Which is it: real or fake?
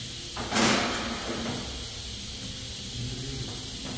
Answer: real